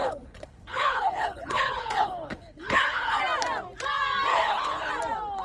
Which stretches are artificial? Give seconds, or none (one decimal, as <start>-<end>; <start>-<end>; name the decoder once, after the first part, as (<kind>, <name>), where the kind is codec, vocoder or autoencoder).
0.0-3.2 (codec, HILCodec); 4.3-4.9